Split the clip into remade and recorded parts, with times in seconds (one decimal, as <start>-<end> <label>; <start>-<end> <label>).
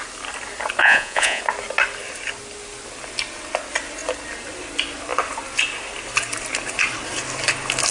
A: 0.0-0.8 recorded; 0.8-1.4 remade; 1.4-7.9 recorded